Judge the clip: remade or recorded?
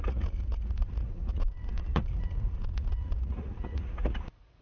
remade